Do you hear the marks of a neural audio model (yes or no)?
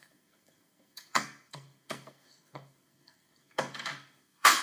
yes